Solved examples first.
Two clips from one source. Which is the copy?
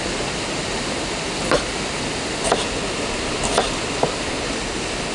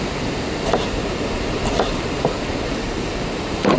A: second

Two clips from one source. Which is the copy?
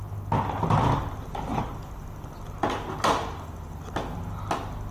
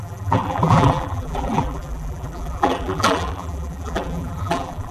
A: second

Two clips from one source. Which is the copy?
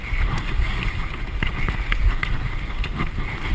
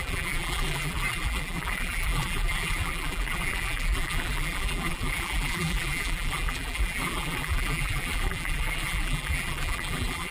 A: second